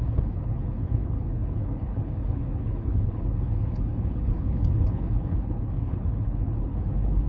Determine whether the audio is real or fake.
fake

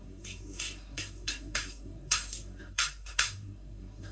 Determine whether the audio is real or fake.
fake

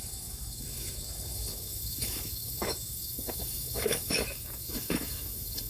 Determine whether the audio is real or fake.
fake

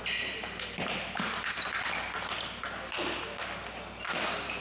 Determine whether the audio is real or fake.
real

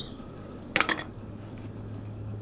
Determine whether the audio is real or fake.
fake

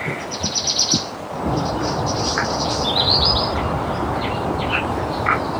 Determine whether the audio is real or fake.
fake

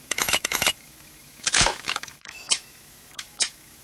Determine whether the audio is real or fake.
fake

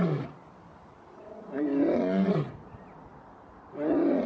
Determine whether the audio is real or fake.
real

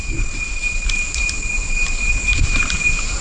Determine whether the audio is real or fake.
real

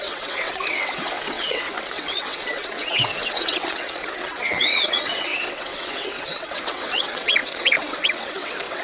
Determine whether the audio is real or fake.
fake